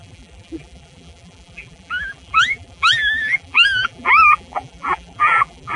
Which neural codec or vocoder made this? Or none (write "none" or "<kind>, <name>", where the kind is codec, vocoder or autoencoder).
vocoder, BigVGAN v2